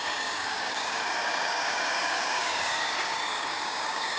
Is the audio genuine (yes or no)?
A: no